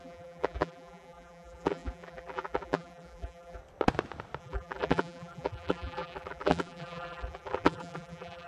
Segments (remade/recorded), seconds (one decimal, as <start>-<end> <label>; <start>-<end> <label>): 0.0-3.6 remade; 3.6-4.4 recorded; 4.4-8.5 remade